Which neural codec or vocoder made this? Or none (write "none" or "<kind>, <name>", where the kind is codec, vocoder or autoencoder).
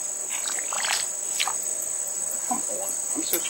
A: none